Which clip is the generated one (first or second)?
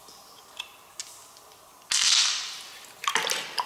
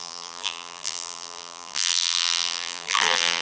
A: second